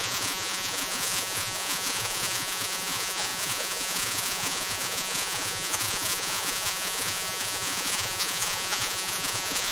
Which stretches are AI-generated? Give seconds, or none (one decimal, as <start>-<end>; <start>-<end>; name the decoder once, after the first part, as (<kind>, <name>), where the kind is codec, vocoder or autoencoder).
0.0-9.7 (vocoder, Vocos)